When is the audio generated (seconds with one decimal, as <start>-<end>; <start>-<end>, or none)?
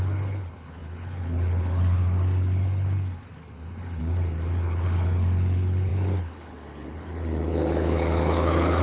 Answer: 0.0-8.8